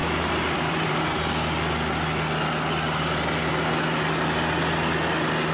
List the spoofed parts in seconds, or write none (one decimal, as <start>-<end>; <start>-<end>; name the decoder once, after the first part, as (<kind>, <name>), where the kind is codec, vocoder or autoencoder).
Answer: 0.0-1.2 (vocoder, BigVGAN v2)

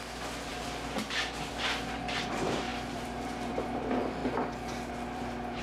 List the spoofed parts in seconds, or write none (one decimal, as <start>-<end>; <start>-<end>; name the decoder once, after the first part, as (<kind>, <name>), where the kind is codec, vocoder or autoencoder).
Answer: 0.0-4.2 (vocoder, BigVGAN v2); 4.9-5.6

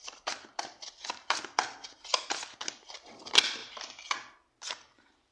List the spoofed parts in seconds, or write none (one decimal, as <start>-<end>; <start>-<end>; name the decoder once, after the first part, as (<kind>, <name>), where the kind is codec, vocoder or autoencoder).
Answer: none

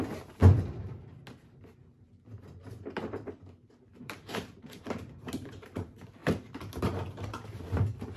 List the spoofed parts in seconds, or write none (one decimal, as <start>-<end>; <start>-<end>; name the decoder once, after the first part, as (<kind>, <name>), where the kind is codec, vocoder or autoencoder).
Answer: 0.0-0.4 (vocoder, BigVGAN v2); 4.0-6.2; 6.8-8.2

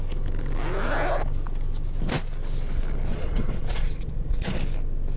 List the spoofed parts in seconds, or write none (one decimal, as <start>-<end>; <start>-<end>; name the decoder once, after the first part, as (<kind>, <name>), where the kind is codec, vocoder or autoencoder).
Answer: 3.1-4.6 (vocoder, Vocos)

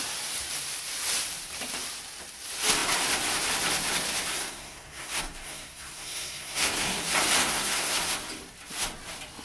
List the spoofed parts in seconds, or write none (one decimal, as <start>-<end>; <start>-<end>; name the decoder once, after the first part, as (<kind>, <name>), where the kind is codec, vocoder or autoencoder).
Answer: 4.3-7.0 (codec, SNAC); 7.4-8.0

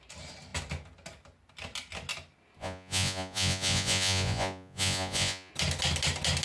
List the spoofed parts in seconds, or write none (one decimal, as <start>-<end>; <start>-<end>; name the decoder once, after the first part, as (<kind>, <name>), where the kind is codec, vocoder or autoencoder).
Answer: 2.6-5.5 (vocoder, Vocos)